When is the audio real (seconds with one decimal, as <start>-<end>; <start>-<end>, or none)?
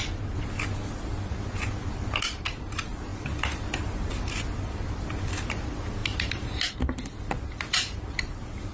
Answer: 0.0-8.7